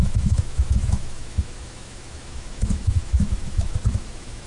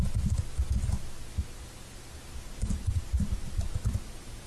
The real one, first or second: second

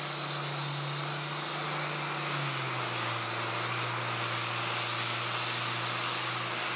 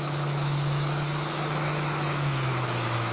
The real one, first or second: first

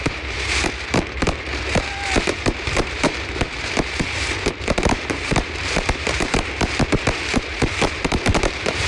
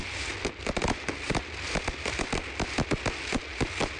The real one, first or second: second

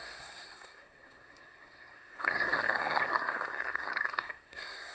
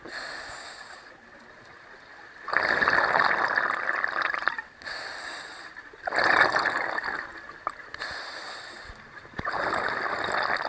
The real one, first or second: second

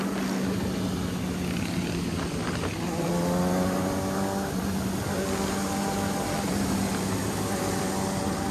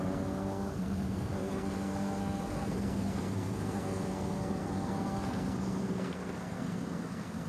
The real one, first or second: first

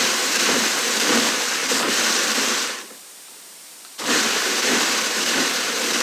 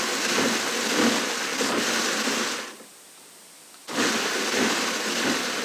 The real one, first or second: second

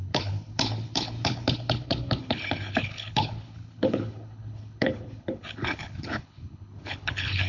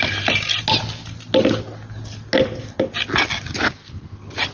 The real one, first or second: second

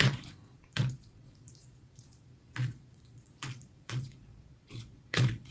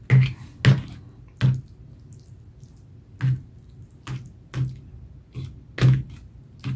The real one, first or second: second